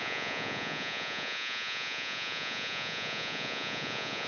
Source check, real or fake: fake